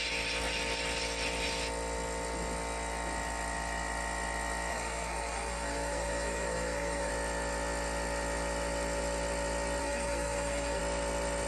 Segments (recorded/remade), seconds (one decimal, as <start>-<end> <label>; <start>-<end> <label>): 0.0-4.7 recorded; 4.7-7.1 remade; 7.1-9.8 recorded; 9.8-10.8 remade; 10.8-11.5 recorded